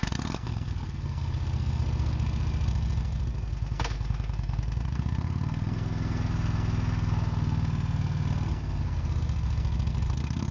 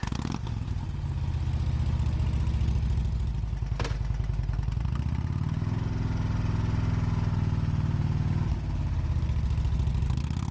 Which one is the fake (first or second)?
first